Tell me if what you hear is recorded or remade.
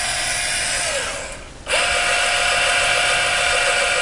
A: recorded